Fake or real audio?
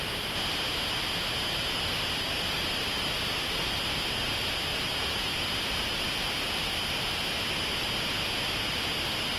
real